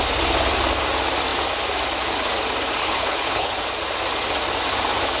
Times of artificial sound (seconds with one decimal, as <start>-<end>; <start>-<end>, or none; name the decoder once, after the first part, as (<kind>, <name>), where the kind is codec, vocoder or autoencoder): 2.8-3.5 (codec, HILCodec)